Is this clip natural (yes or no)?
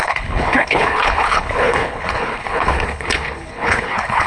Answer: no